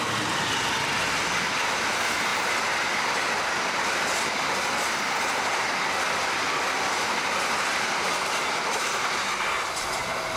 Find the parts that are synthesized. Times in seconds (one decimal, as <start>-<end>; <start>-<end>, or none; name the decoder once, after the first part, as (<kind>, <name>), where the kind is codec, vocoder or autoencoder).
none